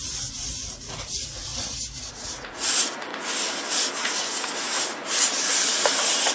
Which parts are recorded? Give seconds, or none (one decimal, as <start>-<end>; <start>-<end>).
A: 1.5-2.1; 3.1-4.0; 5.0-6.3